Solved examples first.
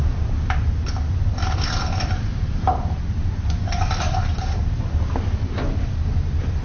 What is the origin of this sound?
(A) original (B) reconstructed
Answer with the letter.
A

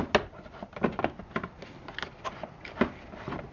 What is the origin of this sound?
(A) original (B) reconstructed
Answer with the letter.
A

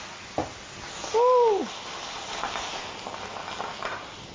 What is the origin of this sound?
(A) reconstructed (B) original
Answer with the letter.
B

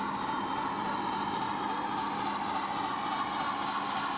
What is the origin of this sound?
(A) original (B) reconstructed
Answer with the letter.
A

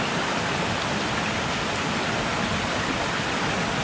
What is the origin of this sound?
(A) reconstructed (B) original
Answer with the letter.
B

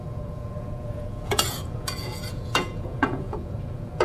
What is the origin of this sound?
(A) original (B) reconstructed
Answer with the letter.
B